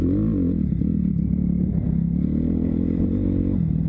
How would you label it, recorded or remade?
recorded